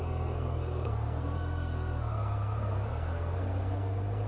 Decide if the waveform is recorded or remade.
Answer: remade